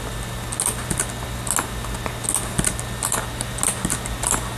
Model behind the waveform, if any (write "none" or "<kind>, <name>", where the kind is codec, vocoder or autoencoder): none